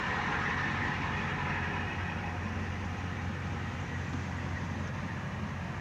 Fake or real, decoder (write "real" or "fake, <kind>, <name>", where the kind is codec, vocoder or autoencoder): real